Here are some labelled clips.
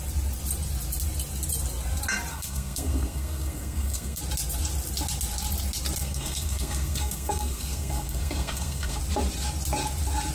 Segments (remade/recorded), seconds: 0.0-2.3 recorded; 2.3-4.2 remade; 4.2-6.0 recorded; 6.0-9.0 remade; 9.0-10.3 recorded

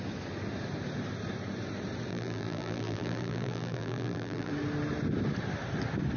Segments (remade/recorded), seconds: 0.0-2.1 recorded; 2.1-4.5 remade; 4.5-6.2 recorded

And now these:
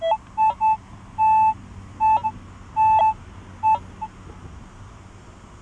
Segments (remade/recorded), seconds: 0.0-5.6 recorded

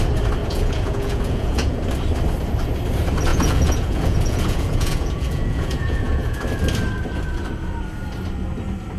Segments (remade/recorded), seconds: 0.0-0.4 recorded; 0.4-1.8 remade; 1.8-3.3 recorded; 3.3-6.4 remade; 6.4-9.0 recorded